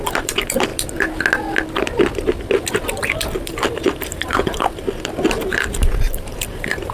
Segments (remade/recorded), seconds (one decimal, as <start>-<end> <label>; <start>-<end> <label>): 0.0-0.7 remade; 0.7-2.7 recorded; 2.7-6.9 remade